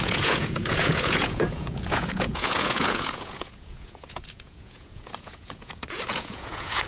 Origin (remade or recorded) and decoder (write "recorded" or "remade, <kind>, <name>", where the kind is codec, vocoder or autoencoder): remade, vocoder, Vocos